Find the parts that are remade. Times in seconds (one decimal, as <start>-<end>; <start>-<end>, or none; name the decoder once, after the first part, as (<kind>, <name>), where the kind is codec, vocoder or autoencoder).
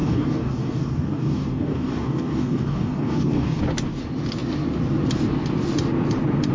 0.0-3.6 (codec, DAC)